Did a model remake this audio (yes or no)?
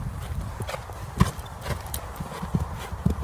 no